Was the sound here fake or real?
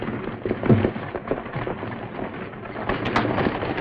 real